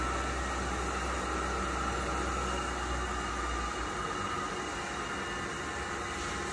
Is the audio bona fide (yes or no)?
yes